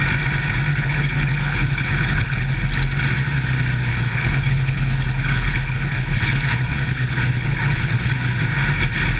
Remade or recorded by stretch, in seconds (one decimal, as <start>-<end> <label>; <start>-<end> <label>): 0.0-0.7 recorded; 0.7-2.5 remade; 2.5-3.9 recorded; 3.9-8.4 remade; 8.4-9.2 recorded